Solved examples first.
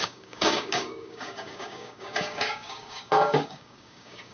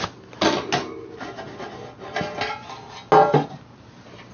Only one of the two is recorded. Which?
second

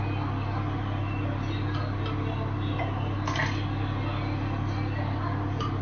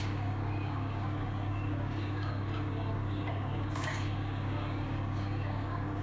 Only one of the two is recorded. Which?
first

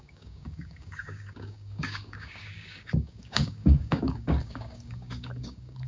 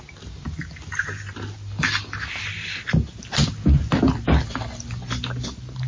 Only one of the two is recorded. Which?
second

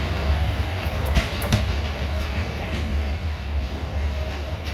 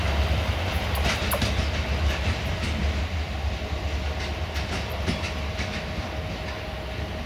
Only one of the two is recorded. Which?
second